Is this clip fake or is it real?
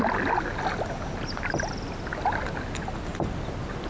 real